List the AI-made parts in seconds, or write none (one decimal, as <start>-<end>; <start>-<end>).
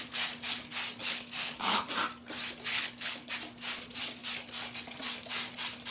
1.0-1.9; 2.7-3.3